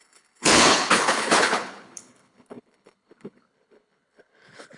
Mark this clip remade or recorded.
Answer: remade